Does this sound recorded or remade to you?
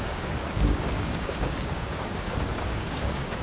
remade